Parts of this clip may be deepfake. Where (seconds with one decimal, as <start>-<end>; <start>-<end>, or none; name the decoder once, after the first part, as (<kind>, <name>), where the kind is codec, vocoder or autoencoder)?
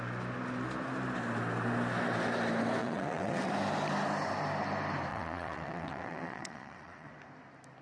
2.8-3.5 (vocoder, WaveNeXt); 5.1-7.1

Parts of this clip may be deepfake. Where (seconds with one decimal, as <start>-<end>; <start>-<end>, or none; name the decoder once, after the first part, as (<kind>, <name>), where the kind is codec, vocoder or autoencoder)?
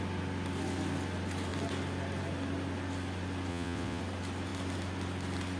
3.5-4.0 (vocoder, WaveNeXt)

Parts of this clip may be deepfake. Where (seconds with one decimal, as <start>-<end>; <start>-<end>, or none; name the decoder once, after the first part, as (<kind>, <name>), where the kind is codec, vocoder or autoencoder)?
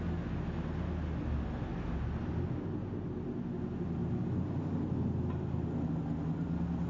none